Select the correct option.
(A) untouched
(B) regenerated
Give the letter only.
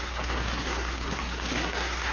B